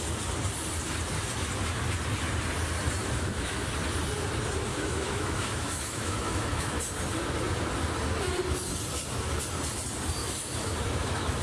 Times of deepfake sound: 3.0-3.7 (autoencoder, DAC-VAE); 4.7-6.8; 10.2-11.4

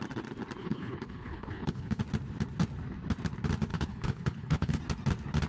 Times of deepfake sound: 0.6-2.0 (codec, HILCodec); 3.7-4.8

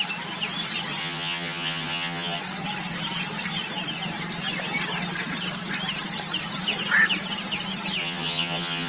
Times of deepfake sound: 1.0-2.4 (vocoder, HiFi-GAN); 8.0-8.9

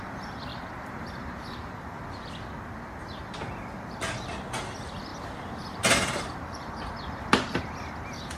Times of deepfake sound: 0.5-2.0 (vocoder, BigVGAN v2); 5.1-7.6

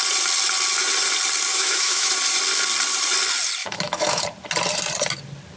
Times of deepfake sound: 1.5-2.1 (autoencoder, DAC-VAE); 3.6-4.2